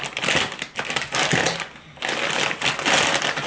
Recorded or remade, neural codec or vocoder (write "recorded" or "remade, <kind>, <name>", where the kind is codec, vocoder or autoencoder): recorded